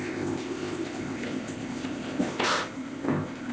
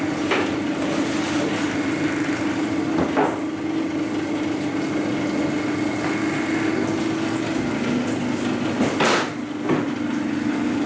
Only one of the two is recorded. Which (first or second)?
second